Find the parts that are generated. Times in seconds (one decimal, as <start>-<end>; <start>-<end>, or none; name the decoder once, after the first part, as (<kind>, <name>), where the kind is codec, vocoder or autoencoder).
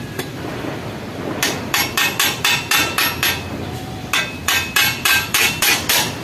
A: none